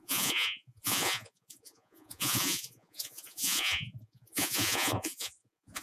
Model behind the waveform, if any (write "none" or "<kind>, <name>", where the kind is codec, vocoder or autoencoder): vocoder, Vocos